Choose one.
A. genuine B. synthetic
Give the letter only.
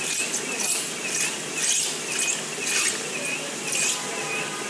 A